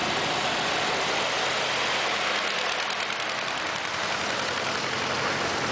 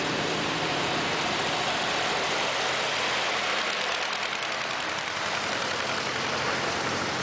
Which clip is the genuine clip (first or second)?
first